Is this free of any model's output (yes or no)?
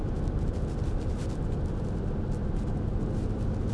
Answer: yes